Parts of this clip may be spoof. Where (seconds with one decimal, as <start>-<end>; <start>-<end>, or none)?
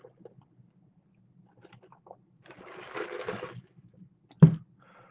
2.6-4.0